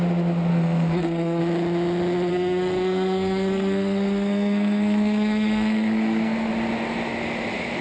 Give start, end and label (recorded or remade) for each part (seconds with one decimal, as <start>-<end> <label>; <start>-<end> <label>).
0.0-0.5 recorded; 0.5-1.4 remade; 1.4-2.3 recorded; 2.3-6.5 remade; 6.5-7.8 recorded